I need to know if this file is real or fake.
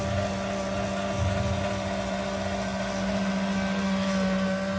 real